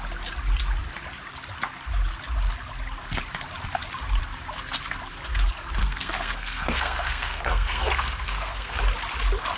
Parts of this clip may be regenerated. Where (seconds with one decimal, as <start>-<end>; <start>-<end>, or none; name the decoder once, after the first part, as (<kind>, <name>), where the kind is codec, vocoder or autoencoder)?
5.8-8.8 (codec, SNAC)

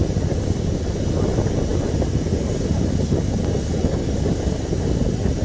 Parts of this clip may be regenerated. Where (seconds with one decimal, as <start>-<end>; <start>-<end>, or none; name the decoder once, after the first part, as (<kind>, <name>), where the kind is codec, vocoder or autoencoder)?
none

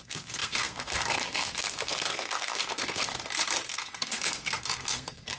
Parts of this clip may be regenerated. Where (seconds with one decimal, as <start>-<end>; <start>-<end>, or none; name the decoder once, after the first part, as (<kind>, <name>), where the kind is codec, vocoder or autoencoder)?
0.0-3.1 (codec, SNAC); 3.7-5.4

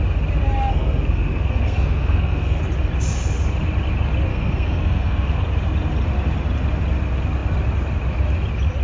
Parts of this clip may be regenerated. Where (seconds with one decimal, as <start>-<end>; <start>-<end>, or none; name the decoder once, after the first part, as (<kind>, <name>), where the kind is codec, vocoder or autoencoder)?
0.7-2.6 (codec, SNAC); 4.3-5.3